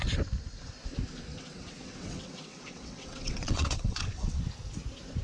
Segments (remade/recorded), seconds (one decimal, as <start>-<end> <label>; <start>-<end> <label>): 0.0-1.3 recorded; 1.3-4.4 remade; 4.4-5.2 recorded